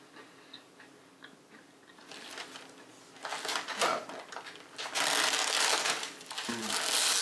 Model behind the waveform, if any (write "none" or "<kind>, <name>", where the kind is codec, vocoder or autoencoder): none